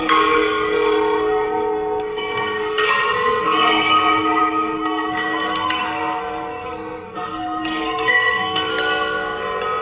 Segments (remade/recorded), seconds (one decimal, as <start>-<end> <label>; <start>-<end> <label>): 0.0-8.7 remade; 8.7-9.8 recorded